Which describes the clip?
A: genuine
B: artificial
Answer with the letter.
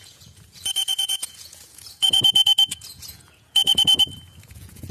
B